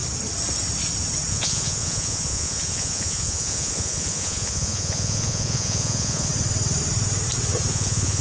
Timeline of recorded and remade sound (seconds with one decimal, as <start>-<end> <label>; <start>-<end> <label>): 0.0-1.3 recorded; 1.3-6.3 remade; 6.3-7.7 recorded; 7.7-8.2 remade